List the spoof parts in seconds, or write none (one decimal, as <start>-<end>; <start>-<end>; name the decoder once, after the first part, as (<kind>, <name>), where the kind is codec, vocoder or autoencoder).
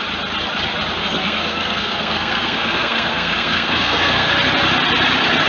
1.0-4.3 (codec, SNAC)